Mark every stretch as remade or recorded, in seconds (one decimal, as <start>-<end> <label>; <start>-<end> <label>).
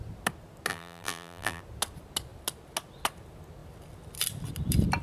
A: 0.0-0.7 recorded; 0.7-1.6 remade; 1.6-5.0 recorded